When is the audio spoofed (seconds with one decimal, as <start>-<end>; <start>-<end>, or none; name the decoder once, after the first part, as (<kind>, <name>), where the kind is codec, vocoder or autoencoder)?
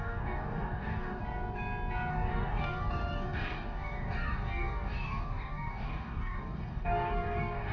0.0-1.2 (codec, DAC); 2.1-7.7